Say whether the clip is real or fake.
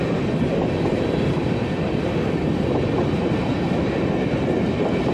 fake